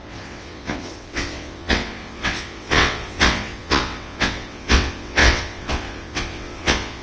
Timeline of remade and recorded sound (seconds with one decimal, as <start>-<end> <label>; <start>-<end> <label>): 0.0-7.0 remade